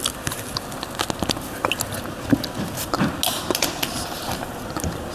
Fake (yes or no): no